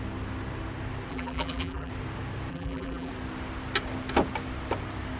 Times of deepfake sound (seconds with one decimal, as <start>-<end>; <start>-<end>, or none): 1.1-1.9; 2.5-3.1